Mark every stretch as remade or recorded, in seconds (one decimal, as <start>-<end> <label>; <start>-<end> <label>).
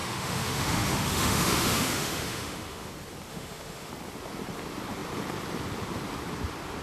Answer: 0.0-2.9 remade; 2.9-3.3 recorded; 3.3-3.9 remade; 3.9-6.8 recorded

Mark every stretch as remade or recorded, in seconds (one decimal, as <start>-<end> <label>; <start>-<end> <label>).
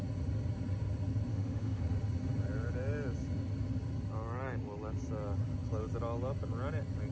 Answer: 0.0-1.3 recorded; 1.3-1.8 remade; 1.8-7.1 recorded